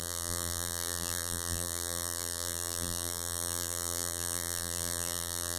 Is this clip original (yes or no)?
no